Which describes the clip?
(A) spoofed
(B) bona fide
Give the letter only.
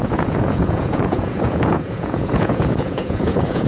A